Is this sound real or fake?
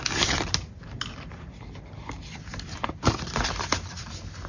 real